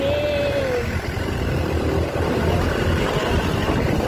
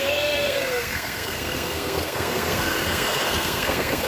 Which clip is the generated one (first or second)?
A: second